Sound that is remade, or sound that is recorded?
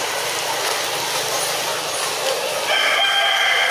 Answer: recorded